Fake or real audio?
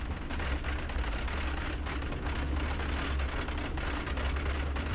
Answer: real